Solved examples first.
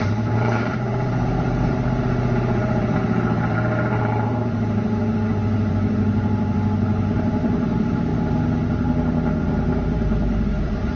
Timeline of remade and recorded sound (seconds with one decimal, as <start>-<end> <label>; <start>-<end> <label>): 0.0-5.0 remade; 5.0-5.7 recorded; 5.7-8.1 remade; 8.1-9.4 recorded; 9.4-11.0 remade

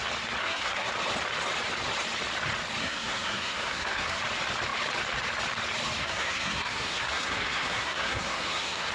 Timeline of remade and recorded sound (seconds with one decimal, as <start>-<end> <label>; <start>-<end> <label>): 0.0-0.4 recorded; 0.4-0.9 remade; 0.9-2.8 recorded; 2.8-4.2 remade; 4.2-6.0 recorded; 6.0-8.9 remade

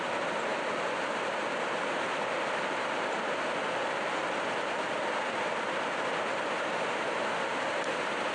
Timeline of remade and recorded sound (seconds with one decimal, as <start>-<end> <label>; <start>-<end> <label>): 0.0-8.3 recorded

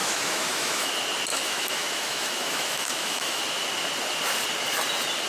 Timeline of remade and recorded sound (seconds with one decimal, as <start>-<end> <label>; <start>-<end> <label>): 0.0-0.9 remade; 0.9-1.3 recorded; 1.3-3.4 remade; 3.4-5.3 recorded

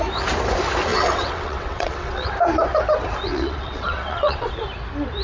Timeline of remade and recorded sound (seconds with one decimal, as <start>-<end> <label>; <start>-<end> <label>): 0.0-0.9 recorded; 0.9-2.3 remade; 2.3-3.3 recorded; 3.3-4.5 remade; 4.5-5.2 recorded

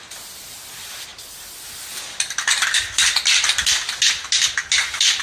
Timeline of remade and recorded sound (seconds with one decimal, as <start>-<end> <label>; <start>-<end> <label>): 0.0-1.1 recorded; 1.1-2.8 remade; 2.8-5.2 recorded

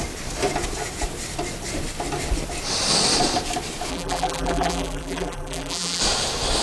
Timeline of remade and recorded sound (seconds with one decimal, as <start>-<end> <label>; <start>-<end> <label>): 0.0-3.9 recorded; 3.9-6.0 remade; 6.0-6.6 recorded

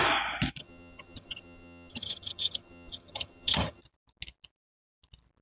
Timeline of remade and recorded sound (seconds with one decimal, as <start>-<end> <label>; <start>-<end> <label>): 0.0-0.6 recorded; 0.6-3.8 remade; 3.8-5.4 recorded